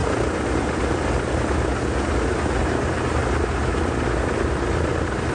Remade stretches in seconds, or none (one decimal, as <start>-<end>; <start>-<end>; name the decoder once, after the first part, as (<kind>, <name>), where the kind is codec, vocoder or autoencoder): none